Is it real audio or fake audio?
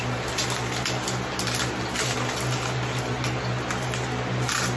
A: real